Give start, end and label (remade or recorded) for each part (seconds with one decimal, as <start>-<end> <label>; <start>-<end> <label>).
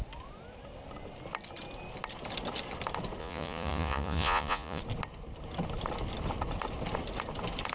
0.0-3.2 recorded; 3.2-4.8 remade; 4.8-7.7 recorded